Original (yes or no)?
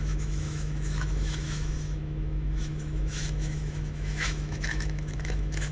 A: no